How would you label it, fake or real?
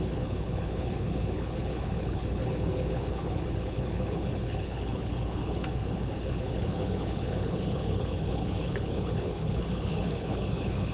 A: fake